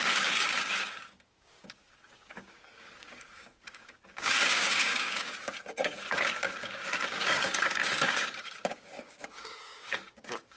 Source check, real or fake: fake